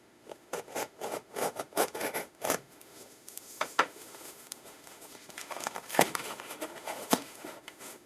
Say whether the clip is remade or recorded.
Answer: remade